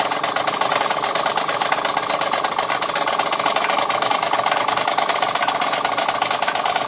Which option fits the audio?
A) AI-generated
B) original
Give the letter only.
B